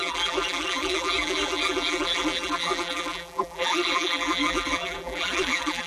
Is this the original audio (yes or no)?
no